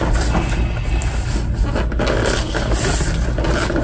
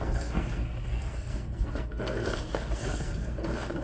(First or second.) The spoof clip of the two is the second